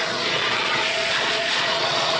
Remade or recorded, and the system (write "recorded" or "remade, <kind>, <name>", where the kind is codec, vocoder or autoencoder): remade, vocoder, Vocos